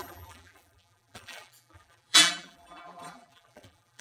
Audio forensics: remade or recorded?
remade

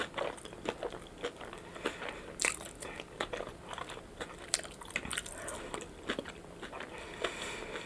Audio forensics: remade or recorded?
recorded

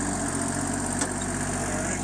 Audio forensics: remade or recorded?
recorded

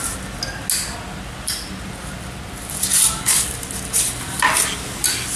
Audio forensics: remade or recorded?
recorded